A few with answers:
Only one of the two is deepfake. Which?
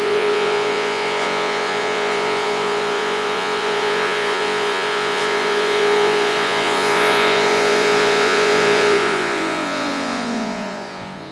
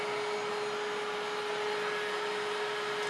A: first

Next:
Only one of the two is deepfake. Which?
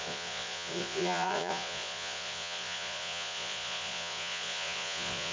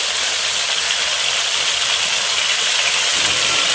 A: first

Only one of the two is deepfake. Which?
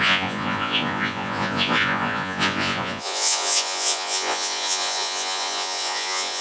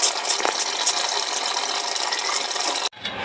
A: first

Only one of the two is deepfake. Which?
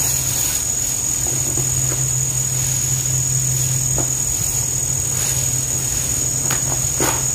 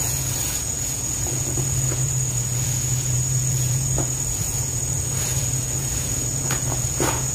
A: second